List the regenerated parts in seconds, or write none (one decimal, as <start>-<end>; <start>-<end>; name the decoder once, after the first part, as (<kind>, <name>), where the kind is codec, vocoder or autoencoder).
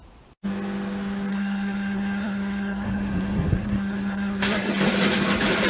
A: 1.3-4.7 (codec, SNAC)